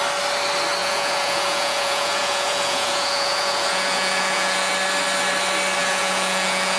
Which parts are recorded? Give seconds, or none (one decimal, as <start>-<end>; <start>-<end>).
0.0-0.8; 4.7-5.8